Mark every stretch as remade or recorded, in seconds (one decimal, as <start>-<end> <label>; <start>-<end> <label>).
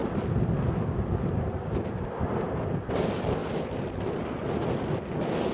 0.0-5.5 recorded